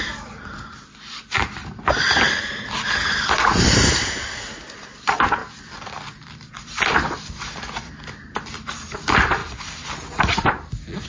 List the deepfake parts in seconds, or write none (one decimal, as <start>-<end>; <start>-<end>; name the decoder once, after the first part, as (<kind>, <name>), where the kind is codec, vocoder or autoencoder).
0.0-1.6 (vocoder, BigVGAN v2); 4.9-9.4